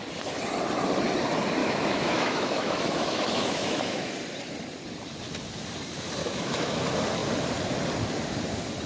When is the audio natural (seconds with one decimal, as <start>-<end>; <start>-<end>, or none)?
0.0-1.6; 4.1-6.2; 6.8-8.9